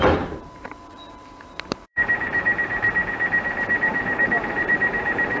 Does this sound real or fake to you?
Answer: fake